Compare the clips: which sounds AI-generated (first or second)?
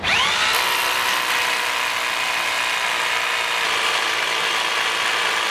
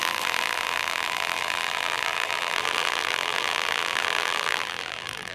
second